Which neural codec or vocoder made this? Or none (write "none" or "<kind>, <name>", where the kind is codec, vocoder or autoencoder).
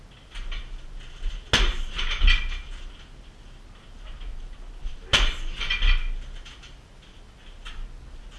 none